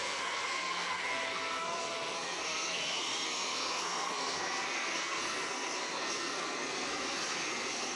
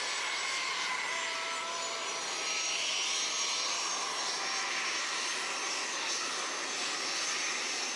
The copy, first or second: first